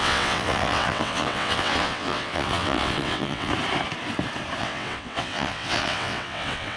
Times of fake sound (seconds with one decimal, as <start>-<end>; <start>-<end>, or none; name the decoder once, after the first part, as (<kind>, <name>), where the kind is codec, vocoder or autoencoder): 0.0-3.5 (vocoder, WaveNeXt); 4.6-6.8